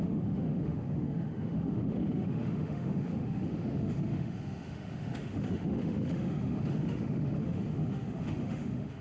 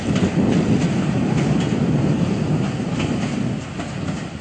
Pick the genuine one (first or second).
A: second